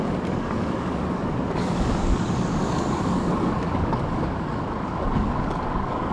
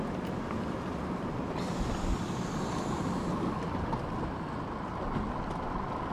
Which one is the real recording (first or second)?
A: second